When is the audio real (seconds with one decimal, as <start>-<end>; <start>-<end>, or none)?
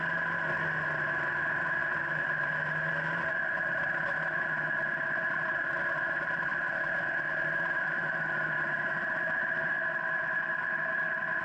0.0-1.8; 3.2-11.4